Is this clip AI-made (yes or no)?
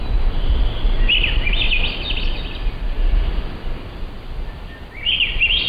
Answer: no